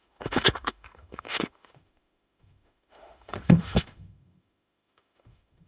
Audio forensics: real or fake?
fake